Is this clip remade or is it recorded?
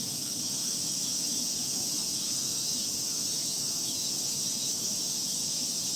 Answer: remade